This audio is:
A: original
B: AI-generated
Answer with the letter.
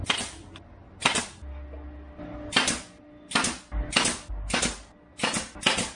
A